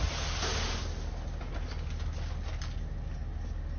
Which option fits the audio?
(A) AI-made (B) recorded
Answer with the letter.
B